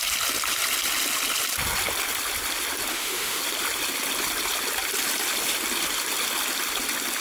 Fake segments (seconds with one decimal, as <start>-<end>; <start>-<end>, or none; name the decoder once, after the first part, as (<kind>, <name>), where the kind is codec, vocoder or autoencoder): 2.9-3.4 (autoencoder, DAC-VAE)